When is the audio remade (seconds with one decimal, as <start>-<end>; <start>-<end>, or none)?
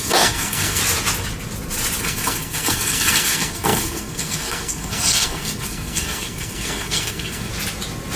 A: 0.0-0.8; 2.0-7.5